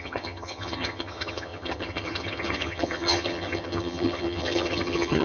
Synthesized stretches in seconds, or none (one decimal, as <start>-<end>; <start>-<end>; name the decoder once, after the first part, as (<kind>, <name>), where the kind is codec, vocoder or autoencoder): 0.0-5.2 (vocoder, HiFi-GAN)